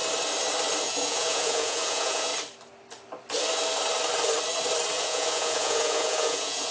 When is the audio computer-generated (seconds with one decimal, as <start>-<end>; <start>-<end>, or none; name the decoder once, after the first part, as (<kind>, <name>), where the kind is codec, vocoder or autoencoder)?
0.8-2.3 (vocoder, Vocos); 5.0-6.7

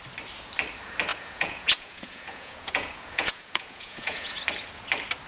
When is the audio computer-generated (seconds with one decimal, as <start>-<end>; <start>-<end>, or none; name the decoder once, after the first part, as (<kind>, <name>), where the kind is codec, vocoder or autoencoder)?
1.1-4.3 (vocoder, Vocos)

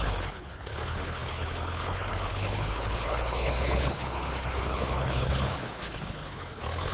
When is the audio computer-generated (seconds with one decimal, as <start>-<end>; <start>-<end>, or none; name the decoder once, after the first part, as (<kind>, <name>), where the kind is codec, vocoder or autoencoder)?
0.0-6.9 (codec, HILCodec)

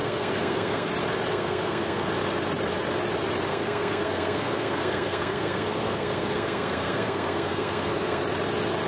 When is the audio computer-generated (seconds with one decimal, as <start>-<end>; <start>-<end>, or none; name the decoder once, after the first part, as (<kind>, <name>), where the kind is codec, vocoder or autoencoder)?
0.0-0.9 (codec, SNAC); 1.3-2.1; 3.5-8.2

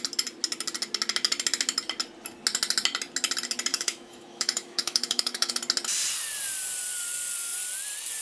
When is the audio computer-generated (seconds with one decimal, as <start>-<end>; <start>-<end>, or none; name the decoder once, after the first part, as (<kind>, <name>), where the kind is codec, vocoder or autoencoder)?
3.7-5.5 (autoencoder, DAC-VAE)

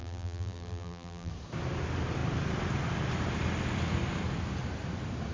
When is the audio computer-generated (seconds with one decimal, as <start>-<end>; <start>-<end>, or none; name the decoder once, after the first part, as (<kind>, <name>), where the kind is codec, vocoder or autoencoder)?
0.0-1.3 (vocoder, BigVGAN v2)

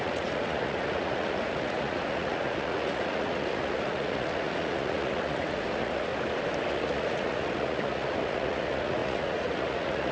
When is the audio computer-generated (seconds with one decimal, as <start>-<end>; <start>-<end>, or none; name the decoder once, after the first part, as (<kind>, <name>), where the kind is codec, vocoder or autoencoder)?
0.0-6.1 (vocoder, Vocos); 6.7-10.1